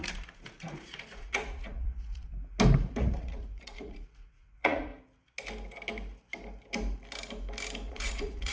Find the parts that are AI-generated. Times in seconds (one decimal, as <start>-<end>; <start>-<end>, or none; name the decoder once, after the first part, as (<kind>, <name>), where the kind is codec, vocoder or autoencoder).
0.0-2.3 (vocoder, Vocos); 3.0-4.9; 7.9-8.5

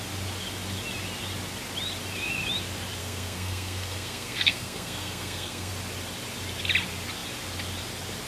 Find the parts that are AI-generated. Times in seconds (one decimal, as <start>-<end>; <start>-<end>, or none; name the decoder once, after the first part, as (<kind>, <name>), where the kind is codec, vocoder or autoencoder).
3.0-5.7 (codec, SNAC)

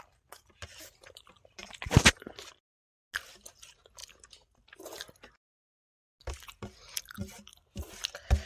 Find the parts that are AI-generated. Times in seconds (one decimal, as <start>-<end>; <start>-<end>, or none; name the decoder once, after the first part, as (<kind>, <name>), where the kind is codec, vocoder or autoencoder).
none